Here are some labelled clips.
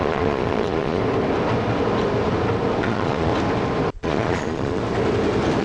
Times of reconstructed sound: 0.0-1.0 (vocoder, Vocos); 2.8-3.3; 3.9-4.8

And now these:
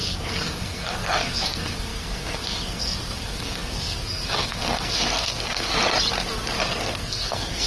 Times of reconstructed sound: 0.0-5.7 (codec, SNAC); 6.6-7.7

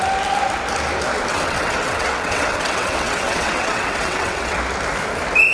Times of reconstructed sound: 1.3-4.6 (vocoder, WaveNeXt)